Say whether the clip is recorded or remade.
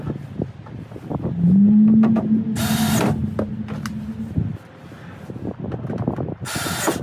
recorded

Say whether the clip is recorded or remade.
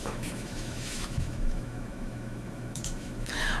remade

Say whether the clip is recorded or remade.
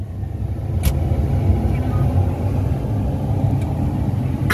recorded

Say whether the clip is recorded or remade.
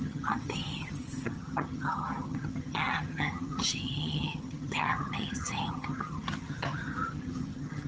remade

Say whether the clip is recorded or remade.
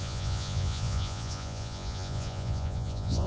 remade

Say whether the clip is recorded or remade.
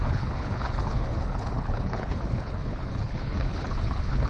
remade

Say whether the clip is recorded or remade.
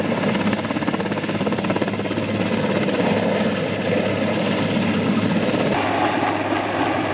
recorded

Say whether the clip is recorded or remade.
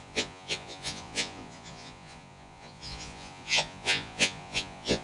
remade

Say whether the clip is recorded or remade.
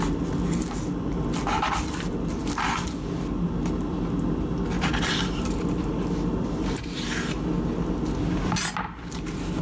recorded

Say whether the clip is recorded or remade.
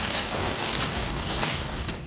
remade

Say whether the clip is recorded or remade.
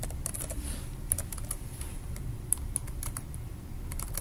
remade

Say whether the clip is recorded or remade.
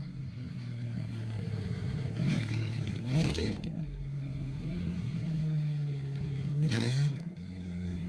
remade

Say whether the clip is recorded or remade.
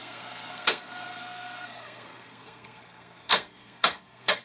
remade